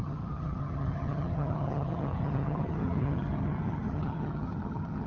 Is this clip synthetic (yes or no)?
yes